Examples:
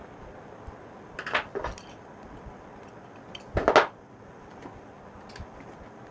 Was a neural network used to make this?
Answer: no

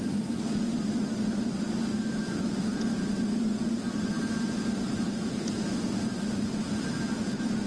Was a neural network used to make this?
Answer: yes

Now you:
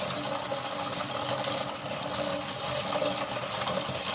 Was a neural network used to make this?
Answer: no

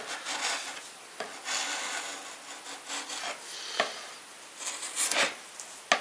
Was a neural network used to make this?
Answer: no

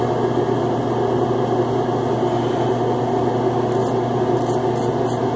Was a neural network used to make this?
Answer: no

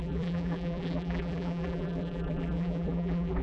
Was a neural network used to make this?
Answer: yes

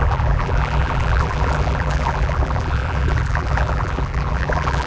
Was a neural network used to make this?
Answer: yes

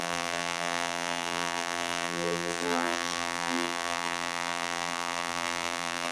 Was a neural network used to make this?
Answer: yes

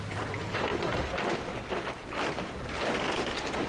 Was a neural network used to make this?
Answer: no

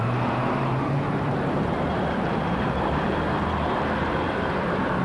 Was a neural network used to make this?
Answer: yes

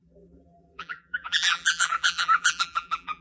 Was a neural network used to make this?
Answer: yes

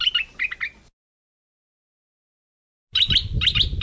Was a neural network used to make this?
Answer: no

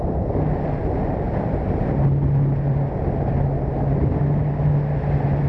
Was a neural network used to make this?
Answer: no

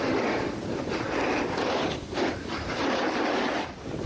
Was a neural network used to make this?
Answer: yes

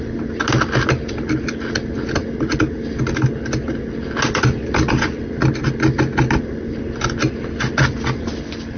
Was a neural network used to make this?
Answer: no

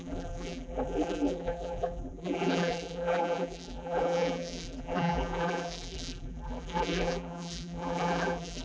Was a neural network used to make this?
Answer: yes